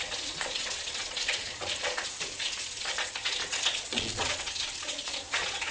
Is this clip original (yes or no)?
no